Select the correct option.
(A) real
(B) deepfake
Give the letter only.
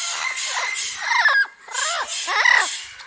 A